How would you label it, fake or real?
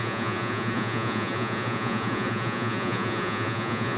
fake